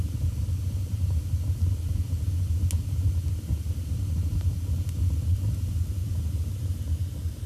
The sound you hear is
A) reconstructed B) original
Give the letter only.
B